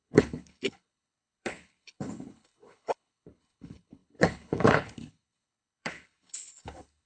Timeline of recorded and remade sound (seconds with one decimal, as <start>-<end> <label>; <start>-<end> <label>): 0.0-7.1 remade